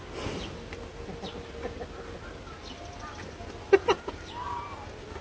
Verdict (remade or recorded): recorded